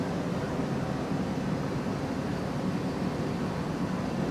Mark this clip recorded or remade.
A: recorded